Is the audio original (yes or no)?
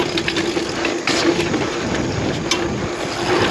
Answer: yes